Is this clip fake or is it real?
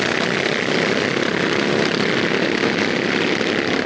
real